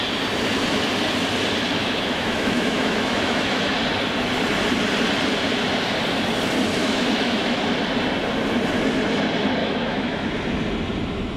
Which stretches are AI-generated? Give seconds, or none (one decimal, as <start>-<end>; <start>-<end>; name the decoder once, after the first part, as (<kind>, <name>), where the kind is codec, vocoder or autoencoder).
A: 1.8-3.7 (autoencoder, DAC-VAE); 6.8-7.6; 9.6-10.3